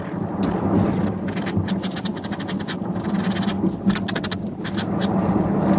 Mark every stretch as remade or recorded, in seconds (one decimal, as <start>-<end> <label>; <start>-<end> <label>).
0.0-5.8 recorded